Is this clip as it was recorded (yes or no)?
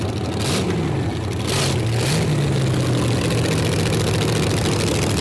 yes